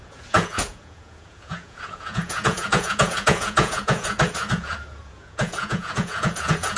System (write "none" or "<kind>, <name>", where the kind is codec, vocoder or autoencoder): vocoder, Vocos